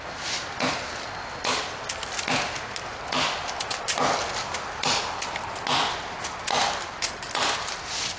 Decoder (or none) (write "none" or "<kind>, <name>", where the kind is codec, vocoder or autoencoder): none